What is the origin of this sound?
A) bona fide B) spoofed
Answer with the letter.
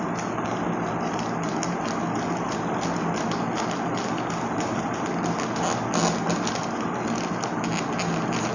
A